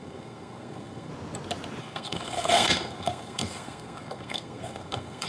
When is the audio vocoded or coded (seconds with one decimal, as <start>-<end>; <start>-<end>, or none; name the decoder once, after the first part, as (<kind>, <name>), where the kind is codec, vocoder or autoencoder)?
0.0-1.1 (codec, SNAC); 1.8-5.3

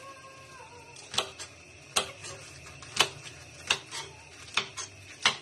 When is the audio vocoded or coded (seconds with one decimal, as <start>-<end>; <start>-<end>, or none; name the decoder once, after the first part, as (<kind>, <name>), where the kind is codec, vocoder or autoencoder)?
none

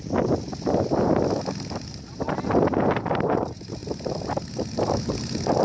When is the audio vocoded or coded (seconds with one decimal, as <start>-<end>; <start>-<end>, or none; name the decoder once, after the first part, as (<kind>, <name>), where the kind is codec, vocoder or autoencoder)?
none

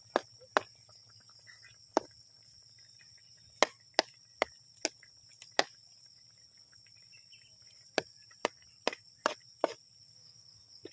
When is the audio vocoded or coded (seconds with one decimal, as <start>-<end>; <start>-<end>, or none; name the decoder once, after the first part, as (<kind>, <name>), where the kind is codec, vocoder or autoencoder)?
none

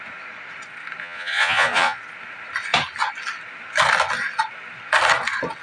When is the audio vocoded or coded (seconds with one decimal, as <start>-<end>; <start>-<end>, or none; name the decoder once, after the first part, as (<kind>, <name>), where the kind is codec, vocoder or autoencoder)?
1.0-2.0 (vocoder, Vocos)

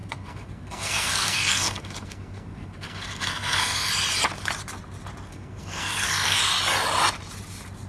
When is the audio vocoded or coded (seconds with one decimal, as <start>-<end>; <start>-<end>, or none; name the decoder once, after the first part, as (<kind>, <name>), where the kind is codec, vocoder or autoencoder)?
0.0-3.9 (codec, SNAC); 5.3-6.4